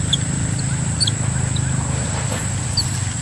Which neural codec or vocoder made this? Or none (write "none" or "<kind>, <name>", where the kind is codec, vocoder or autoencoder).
none